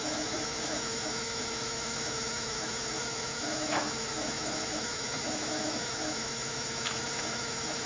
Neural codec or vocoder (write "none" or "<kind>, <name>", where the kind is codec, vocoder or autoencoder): autoencoder, DAC-VAE